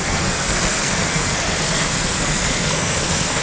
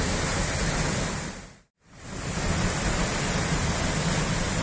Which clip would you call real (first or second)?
second